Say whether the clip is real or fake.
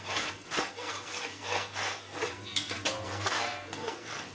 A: fake